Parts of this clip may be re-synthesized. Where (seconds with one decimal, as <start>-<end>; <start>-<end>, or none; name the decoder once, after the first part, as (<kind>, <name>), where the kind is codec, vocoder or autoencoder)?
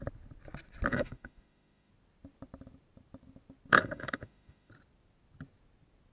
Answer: 0.9-1.9 (autoencoder, DAC-VAE); 3.7-4.7